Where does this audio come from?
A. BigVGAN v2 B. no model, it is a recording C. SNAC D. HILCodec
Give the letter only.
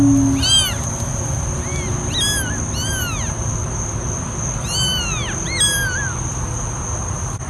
B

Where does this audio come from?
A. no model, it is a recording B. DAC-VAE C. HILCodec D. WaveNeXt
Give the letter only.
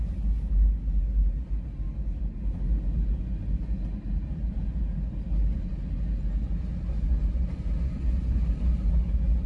A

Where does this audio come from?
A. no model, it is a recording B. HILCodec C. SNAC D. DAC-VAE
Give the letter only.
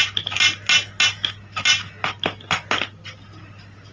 A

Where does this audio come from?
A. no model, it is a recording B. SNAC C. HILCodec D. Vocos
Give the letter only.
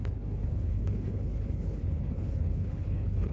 C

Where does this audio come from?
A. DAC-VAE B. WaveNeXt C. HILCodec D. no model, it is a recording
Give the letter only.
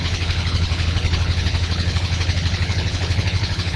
C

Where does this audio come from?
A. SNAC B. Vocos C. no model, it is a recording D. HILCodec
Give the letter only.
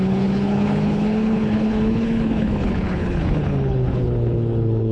D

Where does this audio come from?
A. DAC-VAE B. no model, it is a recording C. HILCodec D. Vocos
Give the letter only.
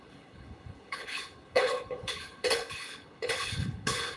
C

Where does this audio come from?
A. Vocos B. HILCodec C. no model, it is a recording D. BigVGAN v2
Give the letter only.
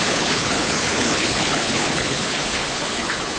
B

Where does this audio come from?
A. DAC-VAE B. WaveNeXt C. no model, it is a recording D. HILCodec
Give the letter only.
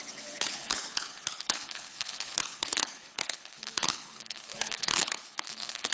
D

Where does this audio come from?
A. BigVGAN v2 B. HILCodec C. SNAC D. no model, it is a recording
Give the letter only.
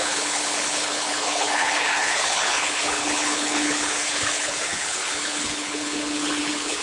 B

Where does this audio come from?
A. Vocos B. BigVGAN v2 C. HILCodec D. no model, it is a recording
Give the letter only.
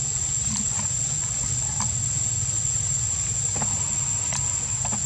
D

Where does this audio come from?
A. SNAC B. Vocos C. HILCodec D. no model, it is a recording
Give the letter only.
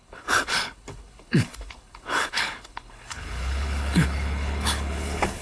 C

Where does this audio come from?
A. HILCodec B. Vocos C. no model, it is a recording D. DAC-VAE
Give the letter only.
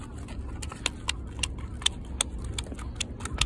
C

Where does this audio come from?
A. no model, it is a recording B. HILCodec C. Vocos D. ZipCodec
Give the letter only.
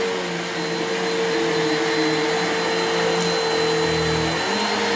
A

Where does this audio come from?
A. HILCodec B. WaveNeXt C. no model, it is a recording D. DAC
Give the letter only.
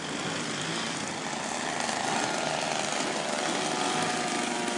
C